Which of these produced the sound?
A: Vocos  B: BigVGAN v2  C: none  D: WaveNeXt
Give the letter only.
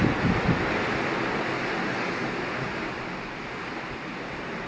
C